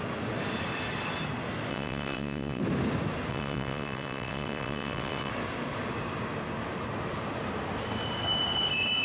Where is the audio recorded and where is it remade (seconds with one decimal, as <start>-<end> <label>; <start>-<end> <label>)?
0.0-1.7 recorded; 1.7-2.6 remade; 2.6-3.3 recorded; 3.3-5.3 remade; 5.3-9.0 recorded